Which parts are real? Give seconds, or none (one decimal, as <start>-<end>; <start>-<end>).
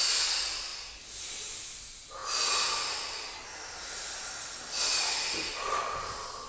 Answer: 0.0-6.5